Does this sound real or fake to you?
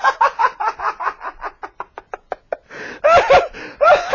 real